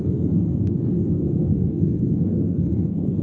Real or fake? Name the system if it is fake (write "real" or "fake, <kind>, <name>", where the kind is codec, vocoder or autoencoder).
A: fake, codec, SNAC